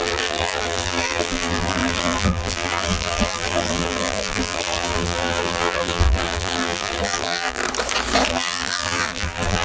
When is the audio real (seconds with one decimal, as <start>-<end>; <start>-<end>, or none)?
7.6-8.3